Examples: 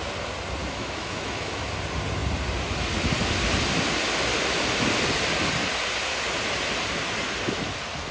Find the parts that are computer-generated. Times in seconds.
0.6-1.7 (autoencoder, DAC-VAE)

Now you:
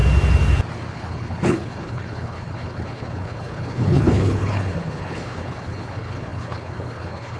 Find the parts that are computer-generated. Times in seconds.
0.9-7.4 (codec, HILCodec)

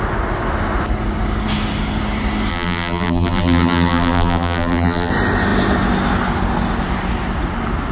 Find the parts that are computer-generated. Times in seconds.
2.5-5.1 (vocoder, BigVGAN v2)

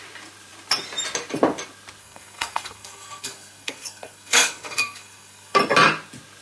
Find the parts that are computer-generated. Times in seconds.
2.0-5.6 (codec, SNAC)